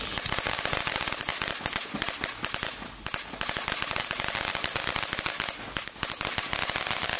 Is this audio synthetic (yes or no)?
no